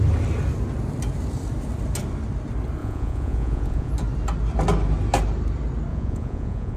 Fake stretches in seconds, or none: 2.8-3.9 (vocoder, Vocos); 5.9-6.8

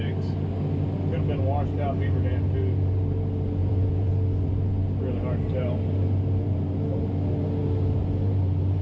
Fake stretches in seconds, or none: 3.6-4.1 (vocoder, Vocos)

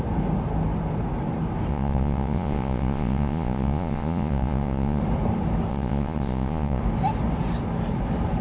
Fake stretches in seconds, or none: 1.7-5.0 (vocoder, Vocos); 5.7-6.8

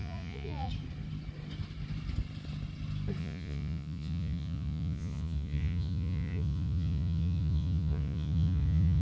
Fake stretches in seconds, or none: 0.0-0.7 (vocoder, Vocos); 3.2-9.0

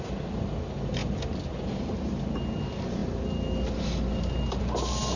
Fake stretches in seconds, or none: none

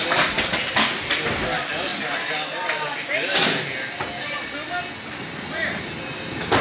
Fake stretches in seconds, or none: none

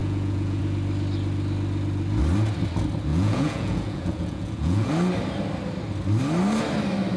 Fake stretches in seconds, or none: 0.0-0.6 (vocoder, Vocos); 3.1-4.9

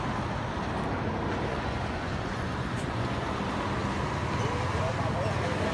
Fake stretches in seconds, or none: 1.5-3.4 (vocoder, Vocos)